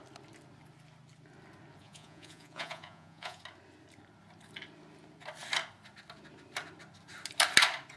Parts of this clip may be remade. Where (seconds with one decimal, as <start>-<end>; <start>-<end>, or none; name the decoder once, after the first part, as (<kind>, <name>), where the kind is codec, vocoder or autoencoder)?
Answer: 1.8-3.4 (vocoder, Vocos)